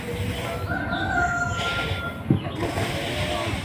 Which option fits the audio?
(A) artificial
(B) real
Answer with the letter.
B